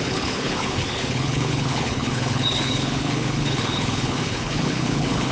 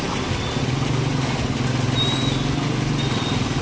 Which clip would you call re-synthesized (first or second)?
first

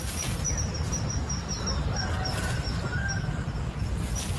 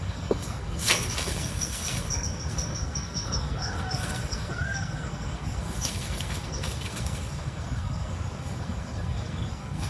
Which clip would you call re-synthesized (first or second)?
second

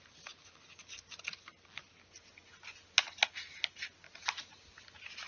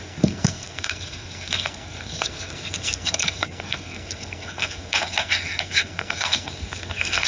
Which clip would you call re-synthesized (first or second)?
second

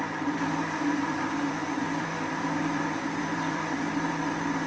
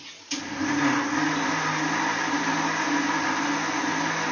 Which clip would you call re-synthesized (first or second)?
first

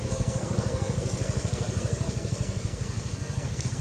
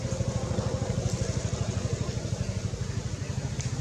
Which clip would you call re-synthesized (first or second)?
first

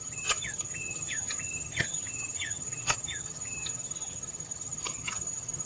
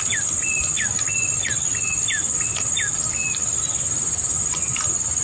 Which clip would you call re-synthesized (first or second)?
first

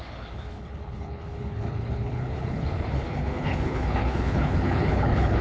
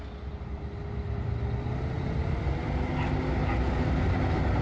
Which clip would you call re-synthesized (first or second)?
first